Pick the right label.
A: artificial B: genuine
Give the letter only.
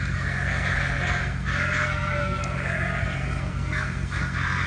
A